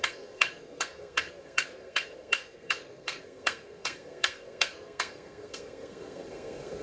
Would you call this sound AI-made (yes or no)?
yes